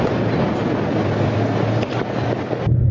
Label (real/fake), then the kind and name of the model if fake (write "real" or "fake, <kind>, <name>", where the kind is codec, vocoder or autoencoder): real